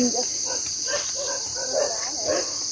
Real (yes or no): yes